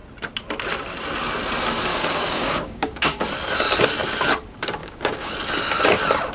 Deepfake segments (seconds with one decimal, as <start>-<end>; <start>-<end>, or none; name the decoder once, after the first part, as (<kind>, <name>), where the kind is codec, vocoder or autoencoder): 1.9-3.2 (codec, DAC); 4.8-5.3